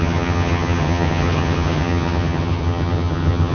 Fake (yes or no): yes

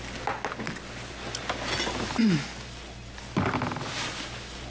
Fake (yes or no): no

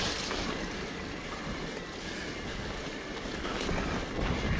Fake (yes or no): no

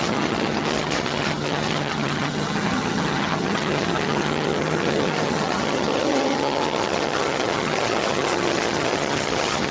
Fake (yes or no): yes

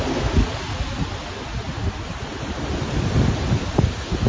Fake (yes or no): no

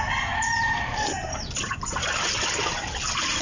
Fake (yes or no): no